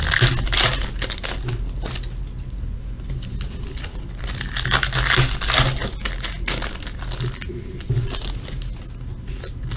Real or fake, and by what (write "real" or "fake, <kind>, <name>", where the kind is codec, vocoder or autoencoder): real